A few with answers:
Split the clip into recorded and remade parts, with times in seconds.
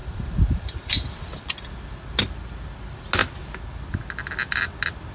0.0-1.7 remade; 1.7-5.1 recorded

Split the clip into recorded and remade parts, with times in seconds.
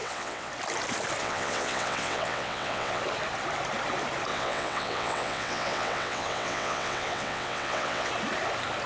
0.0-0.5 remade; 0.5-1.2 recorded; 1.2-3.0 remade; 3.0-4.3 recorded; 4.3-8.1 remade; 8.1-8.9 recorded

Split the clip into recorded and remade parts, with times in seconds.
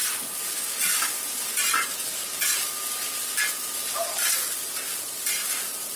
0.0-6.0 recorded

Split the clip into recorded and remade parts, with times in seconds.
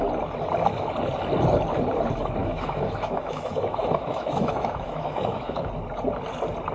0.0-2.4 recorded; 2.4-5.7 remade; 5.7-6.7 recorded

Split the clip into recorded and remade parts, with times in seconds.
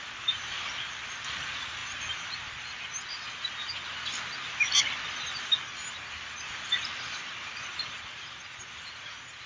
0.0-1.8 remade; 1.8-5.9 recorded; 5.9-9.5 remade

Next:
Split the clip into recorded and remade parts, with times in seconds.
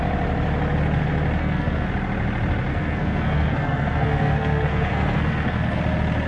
0.0-1.4 recorded; 1.4-1.9 remade; 1.9-2.7 recorded; 2.7-5.8 remade; 5.8-6.3 recorded